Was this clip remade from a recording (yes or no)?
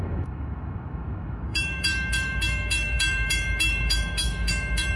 yes